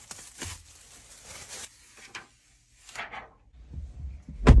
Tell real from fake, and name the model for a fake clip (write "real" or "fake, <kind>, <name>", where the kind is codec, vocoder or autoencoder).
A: real